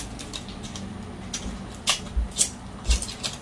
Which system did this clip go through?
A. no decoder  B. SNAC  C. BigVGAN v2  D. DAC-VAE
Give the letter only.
A